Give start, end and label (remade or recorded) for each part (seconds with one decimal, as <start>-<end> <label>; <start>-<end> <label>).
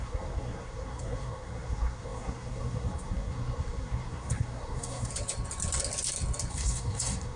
0.0-5.1 remade; 5.1-6.5 recorded; 6.5-7.4 remade